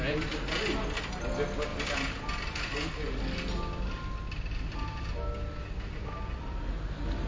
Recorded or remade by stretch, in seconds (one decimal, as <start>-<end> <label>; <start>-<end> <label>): 0.0-7.3 recorded

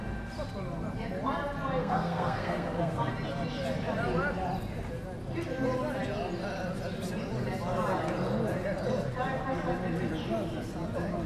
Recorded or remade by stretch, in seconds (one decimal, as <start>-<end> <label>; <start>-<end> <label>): 0.0-1.8 recorded; 1.8-3.1 remade; 3.1-11.3 recorded

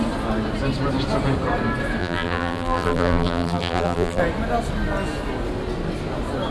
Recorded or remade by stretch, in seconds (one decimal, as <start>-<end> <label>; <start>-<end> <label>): 0.0-2.0 recorded; 2.0-4.2 remade; 4.2-6.5 recorded